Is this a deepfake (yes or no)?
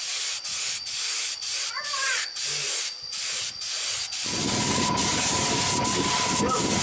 no